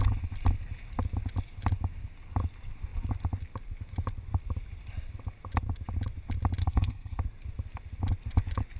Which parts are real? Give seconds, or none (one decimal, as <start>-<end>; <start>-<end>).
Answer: 0.0-6.6; 7.2-8.8